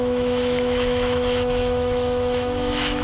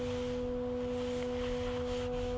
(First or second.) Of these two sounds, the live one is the second